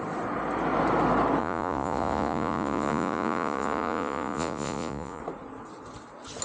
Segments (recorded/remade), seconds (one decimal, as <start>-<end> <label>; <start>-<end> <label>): 0.0-1.4 recorded; 1.4-5.2 remade; 5.2-6.4 recorded